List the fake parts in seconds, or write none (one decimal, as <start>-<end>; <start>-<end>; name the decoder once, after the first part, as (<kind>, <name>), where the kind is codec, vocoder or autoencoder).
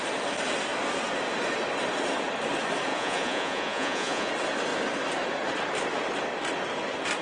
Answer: 2.9-4.3 (vocoder, Vocos)